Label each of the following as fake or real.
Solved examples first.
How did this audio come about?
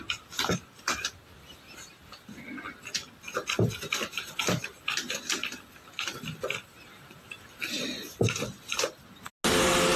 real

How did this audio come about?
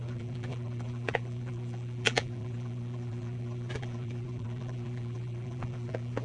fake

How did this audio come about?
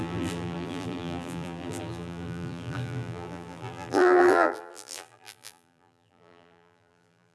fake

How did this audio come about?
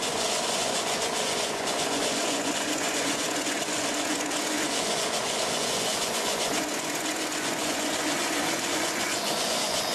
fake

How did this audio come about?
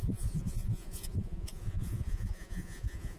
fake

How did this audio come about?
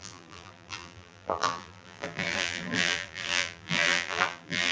fake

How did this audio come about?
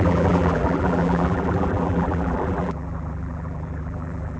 fake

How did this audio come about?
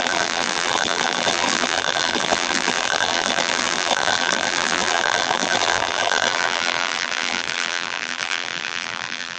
fake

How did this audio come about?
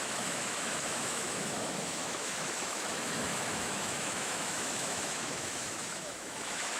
fake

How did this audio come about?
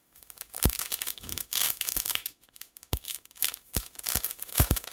fake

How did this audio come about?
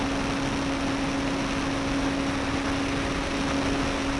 real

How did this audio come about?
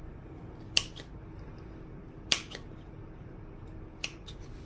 real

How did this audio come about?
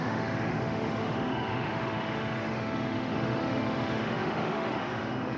fake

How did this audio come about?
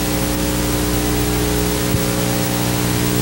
real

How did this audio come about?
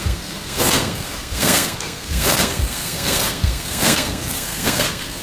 fake